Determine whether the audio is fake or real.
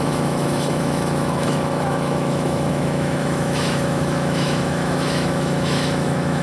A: fake